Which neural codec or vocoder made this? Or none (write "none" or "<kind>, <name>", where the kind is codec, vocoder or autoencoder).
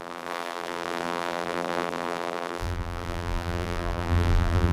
vocoder, BigVGAN v2